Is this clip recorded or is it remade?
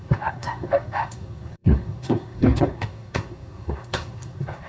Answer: remade